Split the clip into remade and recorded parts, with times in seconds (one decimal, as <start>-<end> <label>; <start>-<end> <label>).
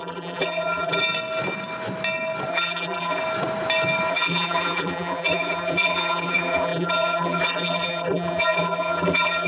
0.0-1.0 remade; 1.0-2.5 recorded; 2.5-3.2 remade; 3.2-4.1 recorded; 4.1-9.5 remade